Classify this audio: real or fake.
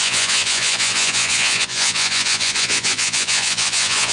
fake